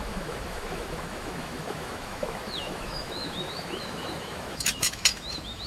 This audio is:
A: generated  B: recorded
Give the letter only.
A